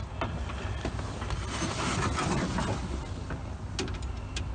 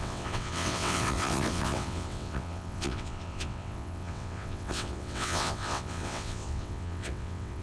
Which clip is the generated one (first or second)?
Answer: second